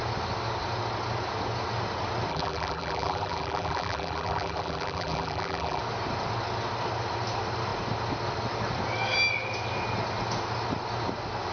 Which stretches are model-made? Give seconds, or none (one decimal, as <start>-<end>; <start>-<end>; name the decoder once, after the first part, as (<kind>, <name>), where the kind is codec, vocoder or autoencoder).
2.3-5.8 (vocoder, BigVGAN v2)